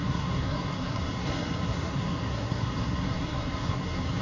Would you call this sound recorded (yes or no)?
no